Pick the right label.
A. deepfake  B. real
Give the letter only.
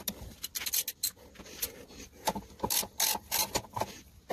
B